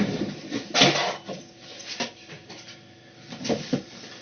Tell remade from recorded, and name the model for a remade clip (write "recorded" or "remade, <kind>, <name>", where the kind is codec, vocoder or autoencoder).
recorded